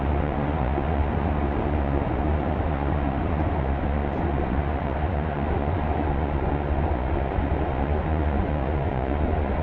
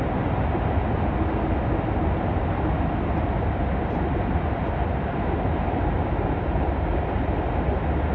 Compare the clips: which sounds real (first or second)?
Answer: second